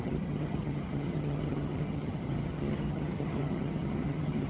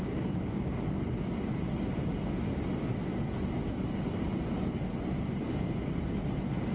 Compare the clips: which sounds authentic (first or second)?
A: second